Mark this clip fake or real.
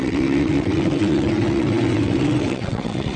fake